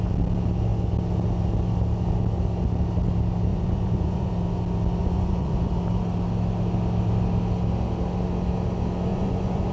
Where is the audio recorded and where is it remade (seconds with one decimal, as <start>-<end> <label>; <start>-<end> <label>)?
0.0-3.5 recorded; 3.5-4.3 remade; 4.3-5.0 recorded; 5.0-5.7 remade; 5.7-9.1 recorded; 9.1-9.7 remade